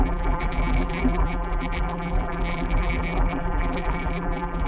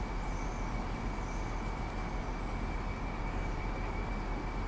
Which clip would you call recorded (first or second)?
second